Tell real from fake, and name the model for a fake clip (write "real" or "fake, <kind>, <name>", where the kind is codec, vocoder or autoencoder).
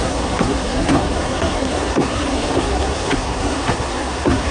fake, codec, SNAC